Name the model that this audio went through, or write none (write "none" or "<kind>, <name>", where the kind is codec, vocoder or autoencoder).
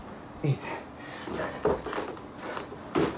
none